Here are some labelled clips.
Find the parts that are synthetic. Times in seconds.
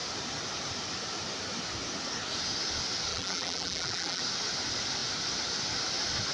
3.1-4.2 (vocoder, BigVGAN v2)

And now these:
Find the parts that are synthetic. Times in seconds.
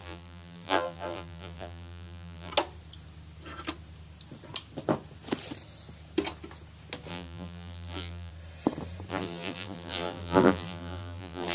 0.0-2.5 (vocoder, BigVGAN v2); 7.1-8.3; 9.1-11.5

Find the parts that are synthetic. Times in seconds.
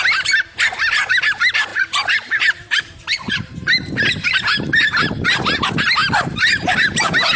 1.7-3.9 (vocoder, BigVGAN v2)